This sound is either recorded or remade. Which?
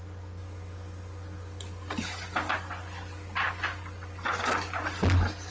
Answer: recorded